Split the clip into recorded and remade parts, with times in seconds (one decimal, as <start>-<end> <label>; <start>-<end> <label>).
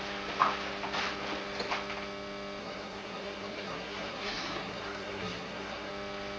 0.0-2.6 recorded; 2.6-5.9 remade; 5.9-6.4 recorded